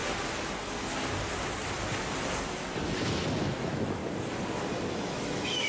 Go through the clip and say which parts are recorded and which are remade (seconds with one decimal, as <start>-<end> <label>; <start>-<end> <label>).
0.0-3.4 recorded; 3.4-4.0 remade; 4.0-4.9 recorded; 4.9-5.7 remade